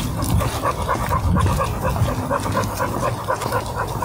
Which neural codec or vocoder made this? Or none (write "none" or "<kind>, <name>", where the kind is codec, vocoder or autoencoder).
none